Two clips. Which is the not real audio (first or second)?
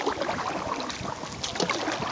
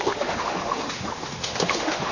second